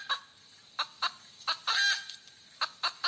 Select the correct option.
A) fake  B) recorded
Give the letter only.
B